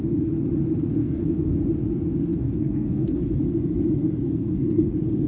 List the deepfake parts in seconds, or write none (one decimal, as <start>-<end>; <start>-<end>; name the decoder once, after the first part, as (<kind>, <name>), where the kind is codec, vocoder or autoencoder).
1.0-1.6 (codec, SNAC); 2.3-3.2; 4.2-4.8